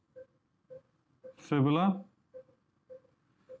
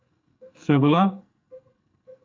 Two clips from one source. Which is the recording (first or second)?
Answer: first